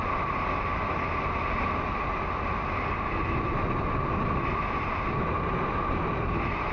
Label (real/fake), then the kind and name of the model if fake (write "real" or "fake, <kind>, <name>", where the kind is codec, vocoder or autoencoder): real